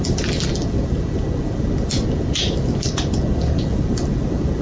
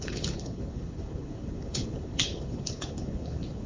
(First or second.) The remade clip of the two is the second